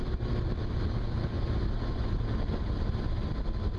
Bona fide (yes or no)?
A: yes